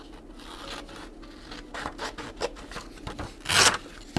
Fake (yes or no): no